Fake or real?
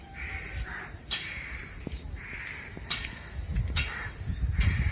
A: fake